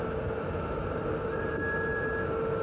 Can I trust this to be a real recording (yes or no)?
yes